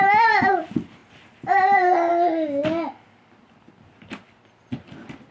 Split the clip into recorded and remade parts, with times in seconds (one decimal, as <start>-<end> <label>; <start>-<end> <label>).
0.0-5.3 recorded